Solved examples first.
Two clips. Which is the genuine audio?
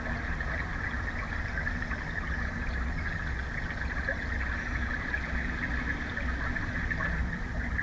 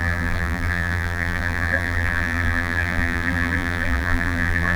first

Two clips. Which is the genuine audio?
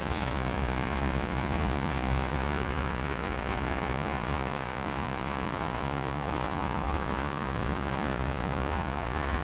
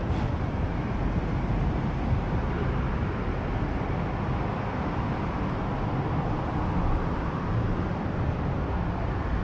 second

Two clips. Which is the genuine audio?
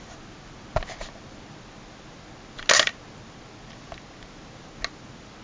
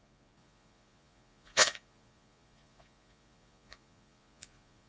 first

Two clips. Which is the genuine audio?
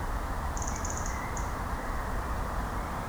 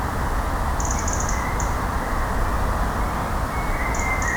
second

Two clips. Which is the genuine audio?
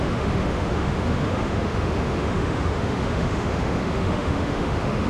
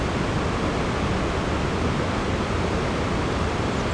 second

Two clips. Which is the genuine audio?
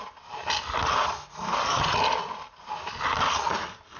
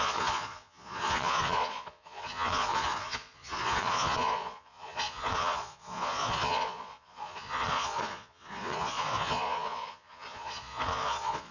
first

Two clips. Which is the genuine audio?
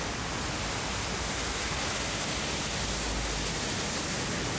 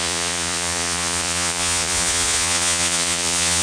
first